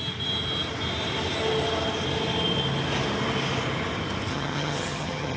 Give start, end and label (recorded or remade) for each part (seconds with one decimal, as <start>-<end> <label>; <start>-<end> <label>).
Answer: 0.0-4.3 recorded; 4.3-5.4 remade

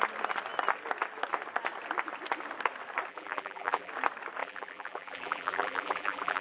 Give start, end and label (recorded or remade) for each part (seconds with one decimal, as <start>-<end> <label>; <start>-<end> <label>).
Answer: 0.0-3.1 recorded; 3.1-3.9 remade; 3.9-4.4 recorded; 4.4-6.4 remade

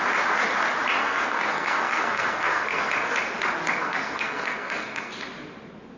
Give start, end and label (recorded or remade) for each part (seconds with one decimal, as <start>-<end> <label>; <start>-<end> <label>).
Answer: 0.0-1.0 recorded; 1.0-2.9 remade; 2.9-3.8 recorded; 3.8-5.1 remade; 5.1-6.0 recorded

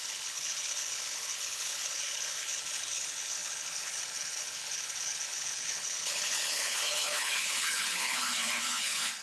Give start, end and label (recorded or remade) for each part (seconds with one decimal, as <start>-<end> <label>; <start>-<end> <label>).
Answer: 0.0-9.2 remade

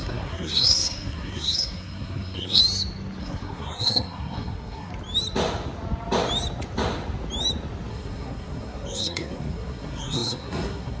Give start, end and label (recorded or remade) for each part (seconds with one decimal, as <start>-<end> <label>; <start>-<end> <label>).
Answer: 0.0-2.6 remade; 2.6-3.2 recorded; 3.2-4.9 remade; 4.9-7.9 recorded; 7.9-11.0 remade

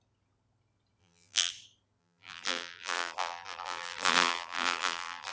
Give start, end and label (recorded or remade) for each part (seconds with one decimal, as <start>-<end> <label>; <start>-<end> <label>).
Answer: 0.0-1.0 recorded; 1.0-1.5 remade; 1.5-2.0 recorded; 2.0-5.3 remade

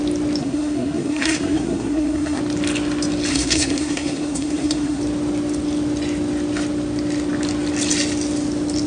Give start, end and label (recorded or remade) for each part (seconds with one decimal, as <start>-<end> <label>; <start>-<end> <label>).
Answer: 0.0-0.4 recorded; 0.4-2.4 remade; 2.4-3.3 recorded; 3.3-5.0 remade; 5.0-8.9 recorded

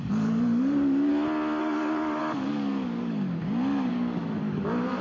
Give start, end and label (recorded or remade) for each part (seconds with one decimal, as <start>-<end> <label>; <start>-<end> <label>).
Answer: 0.0-1.1 remade; 1.1-1.6 recorded; 1.6-3.4 remade; 3.4-3.9 recorded; 3.9-5.0 remade